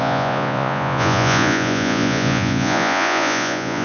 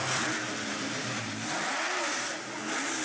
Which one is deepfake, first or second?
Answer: first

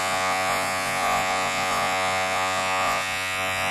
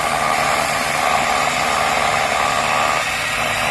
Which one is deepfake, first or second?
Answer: first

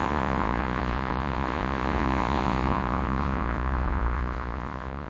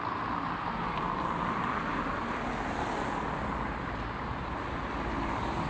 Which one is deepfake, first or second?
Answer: first